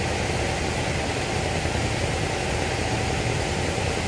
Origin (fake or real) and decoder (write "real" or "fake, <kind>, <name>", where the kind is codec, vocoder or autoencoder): real